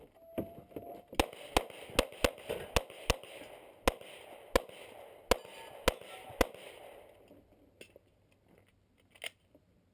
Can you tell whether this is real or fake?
real